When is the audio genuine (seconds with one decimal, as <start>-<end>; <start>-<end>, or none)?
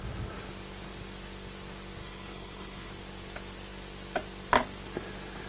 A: 0.0-2.0; 2.9-5.5